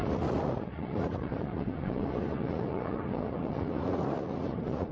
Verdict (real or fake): fake